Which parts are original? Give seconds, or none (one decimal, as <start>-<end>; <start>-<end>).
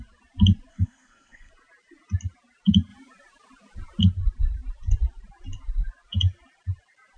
0.0-0.7; 1.5-7.2